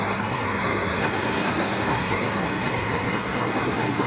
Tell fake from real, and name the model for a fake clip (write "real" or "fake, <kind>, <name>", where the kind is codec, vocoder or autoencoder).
fake, codec, SNAC